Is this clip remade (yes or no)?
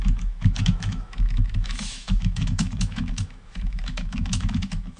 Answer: yes